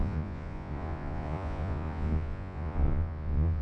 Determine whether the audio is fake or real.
fake